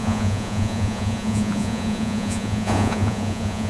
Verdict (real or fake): fake